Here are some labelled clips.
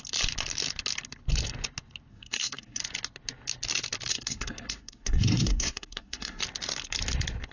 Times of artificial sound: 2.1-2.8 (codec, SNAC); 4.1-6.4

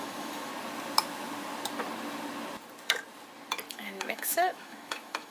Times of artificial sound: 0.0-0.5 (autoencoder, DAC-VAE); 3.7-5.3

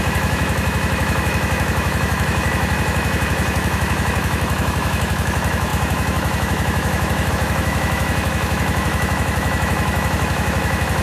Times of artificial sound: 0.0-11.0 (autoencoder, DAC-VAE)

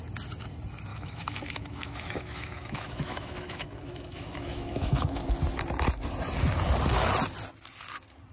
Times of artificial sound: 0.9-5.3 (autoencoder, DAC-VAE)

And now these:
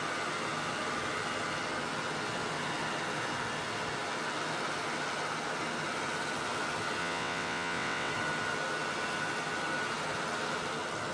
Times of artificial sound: 7.0-8.1 (vocoder, WaveNeXt)

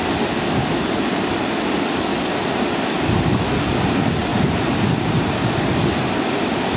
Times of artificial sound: none

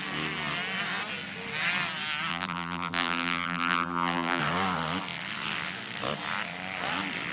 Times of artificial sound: 2.3-4.4 (vocoder, BigVGAN v2)